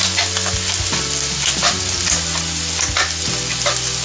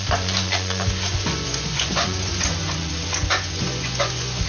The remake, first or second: second